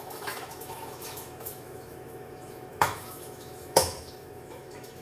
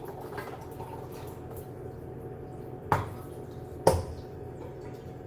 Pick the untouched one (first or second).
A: second